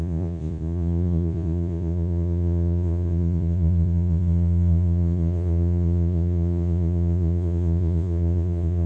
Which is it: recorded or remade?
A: remade